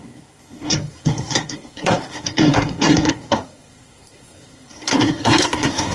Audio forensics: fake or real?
fake